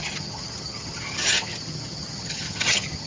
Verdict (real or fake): fake